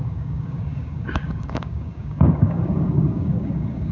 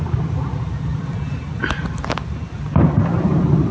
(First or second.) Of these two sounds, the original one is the second